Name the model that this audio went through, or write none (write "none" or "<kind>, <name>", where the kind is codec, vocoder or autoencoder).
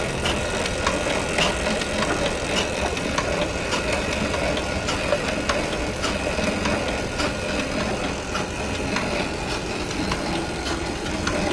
none